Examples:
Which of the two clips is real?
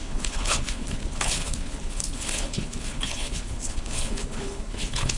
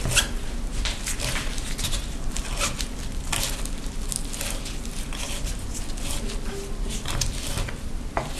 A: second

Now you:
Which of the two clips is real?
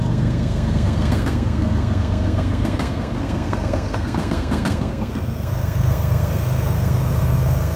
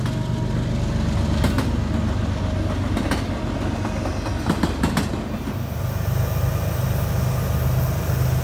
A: second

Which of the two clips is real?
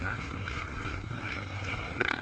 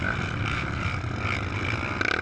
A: second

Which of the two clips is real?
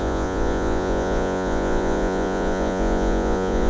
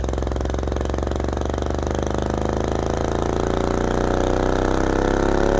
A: second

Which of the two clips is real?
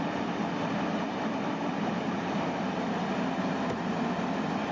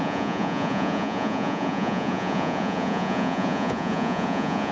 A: first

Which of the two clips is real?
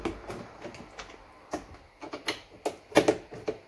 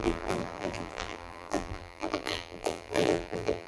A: first